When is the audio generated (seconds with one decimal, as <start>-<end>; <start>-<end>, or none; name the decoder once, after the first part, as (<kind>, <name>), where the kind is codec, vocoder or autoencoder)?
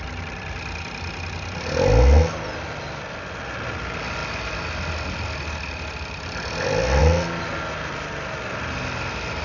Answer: none